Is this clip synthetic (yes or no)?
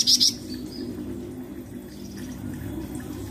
yes